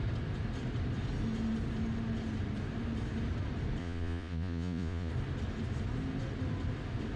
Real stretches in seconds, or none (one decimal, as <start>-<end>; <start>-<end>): 0.0-3.8; 5.1-7.2